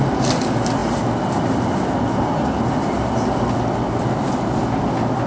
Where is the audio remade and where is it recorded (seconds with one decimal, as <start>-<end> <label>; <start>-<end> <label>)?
0.0-5.3 recorded